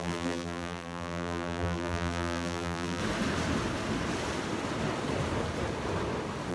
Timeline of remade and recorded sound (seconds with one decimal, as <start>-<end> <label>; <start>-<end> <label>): 0.0-3.0 remade; 3.0-6.5 recorded